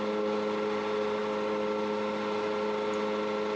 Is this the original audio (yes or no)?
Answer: yes